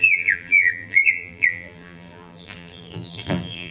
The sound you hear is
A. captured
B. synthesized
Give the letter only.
B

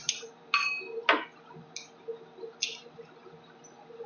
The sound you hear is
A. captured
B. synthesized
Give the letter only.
A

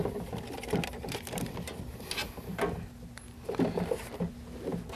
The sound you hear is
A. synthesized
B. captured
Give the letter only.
B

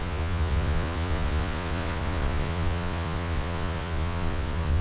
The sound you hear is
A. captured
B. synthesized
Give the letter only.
B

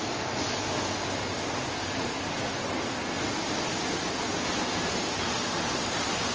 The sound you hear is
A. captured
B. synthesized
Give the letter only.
A